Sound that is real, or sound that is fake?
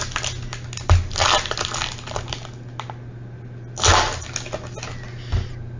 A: real